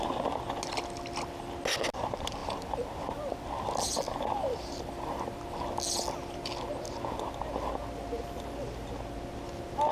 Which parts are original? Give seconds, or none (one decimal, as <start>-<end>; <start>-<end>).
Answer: 0.0-9.9

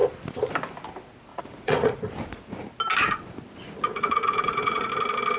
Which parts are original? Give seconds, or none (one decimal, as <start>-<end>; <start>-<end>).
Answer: 0.0-1.3; 2.1-3.9; 4.9-5.4

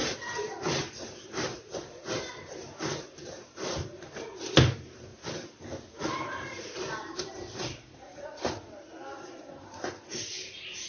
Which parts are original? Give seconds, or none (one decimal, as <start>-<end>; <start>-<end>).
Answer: 5.1-6.4

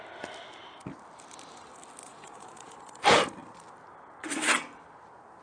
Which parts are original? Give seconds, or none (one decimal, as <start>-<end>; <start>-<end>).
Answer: 0.0-2.0; 3.0-5.4

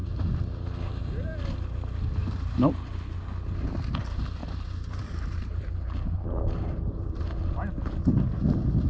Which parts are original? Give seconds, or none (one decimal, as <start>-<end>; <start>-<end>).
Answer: 1.0-2.2; 2.7-4.4; 7.2-8.9